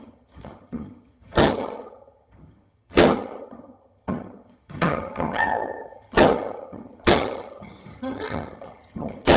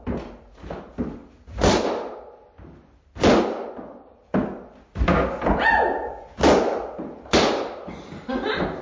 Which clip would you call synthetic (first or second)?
first